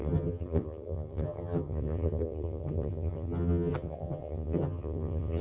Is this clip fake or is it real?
fake